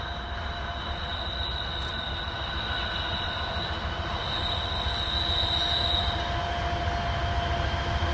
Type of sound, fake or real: real